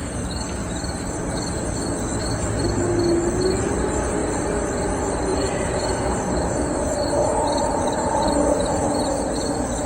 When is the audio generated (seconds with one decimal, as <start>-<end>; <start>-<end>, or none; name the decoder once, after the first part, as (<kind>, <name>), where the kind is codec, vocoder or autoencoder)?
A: 0.6-1.3 (vocoder, BigVGAN v2); 5.3-9.3